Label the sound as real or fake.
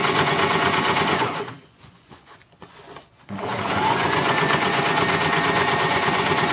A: fake